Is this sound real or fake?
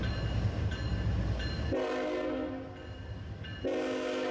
real